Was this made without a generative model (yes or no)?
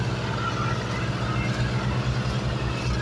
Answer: yes